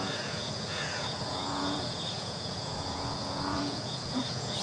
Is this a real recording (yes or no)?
no